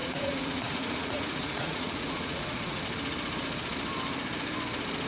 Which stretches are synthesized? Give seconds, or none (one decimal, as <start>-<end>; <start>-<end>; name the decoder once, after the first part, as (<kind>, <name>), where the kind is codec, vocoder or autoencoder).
0.0-2.8 (vocoder, Vocos)